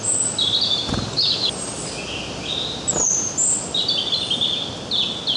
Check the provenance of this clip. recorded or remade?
recorded